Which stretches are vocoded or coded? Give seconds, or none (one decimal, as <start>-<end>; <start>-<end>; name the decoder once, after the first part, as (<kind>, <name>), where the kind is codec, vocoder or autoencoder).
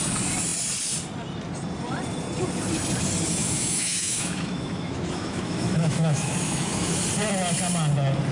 3.4-7.0 (autoencoder, DAC-VAE)